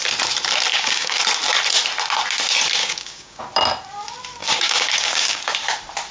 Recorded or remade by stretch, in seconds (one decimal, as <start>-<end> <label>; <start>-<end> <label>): 0.0-0.7 recorded; 0.7-1.2 remade; 1.2-2.8 recorded; 2.8-3.4 remade; 3.4-4.4 recorded; 4.4-5.4 remade; 5.4-6.1 recorded